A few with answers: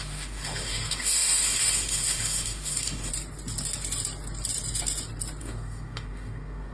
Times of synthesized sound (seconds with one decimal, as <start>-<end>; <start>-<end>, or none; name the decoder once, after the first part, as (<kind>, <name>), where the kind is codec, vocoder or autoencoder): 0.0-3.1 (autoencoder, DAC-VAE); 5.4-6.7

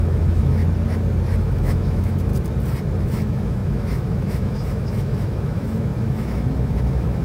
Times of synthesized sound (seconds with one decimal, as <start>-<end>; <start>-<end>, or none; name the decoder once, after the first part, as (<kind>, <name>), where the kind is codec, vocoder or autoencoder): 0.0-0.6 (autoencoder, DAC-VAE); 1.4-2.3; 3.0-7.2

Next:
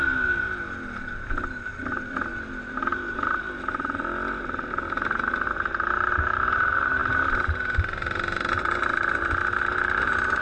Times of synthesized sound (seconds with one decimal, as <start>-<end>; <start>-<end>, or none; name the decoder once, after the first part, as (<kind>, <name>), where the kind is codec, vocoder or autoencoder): none

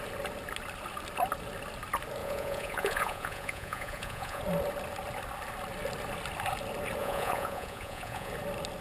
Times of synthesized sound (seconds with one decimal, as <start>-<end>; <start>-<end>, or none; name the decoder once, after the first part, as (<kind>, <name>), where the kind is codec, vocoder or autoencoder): 2.2-4.4 (vocoder, Vocos); 7.0-8.3